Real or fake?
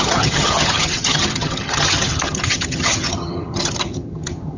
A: fake